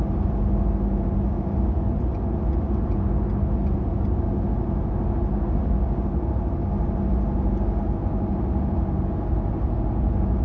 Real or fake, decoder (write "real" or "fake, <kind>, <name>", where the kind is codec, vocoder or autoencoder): real